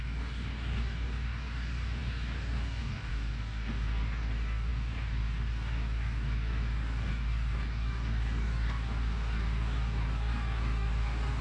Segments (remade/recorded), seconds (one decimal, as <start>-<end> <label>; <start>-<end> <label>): 0.0-11.4 remade